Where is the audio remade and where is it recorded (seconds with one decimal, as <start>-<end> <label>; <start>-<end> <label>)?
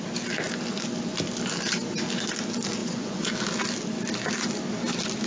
0.0-2.8 recorded; 2.8-3.3 remade; 3.3-5.3 recorded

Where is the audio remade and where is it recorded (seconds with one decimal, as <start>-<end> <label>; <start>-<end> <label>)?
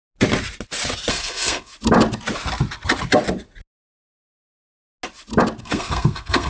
0.0-1.1 recorded; 1.1-1.7 remade; 1.7-5.6 recorded; 5.6-6.5 remade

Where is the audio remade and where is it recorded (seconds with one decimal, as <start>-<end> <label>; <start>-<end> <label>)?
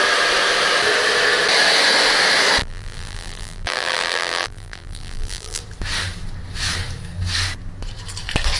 0.0-2.6 recorded; 2.6-5.6 remade; 5.6-8.6 recorded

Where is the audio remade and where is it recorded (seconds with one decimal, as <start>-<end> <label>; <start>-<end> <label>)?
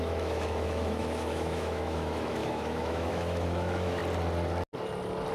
0.0-4.0 remade; 4.0-5.3 recorded